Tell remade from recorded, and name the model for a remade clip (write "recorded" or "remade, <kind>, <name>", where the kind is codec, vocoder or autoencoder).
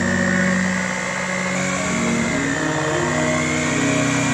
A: recorded